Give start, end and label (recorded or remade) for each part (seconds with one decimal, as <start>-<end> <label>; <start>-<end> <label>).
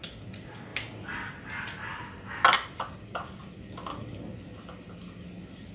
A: 0.0-5.7 recorded